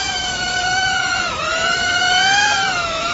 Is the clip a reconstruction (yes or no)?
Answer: yes